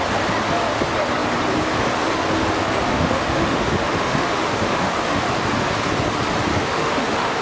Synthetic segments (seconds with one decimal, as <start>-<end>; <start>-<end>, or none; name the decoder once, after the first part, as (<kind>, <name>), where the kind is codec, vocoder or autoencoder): 2.9-5.4 (autoencoder, DAC-VAE); 6.5-7.4